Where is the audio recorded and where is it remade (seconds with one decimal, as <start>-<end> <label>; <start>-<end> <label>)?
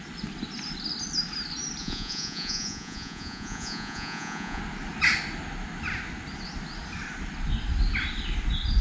0.0-1.8 recorded; 1.8-4.6 remade; 4.6-8.8 recorded